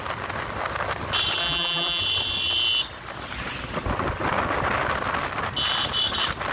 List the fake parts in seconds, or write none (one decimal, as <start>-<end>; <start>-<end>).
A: 1.4-2.0